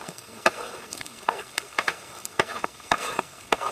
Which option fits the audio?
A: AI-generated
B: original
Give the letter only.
A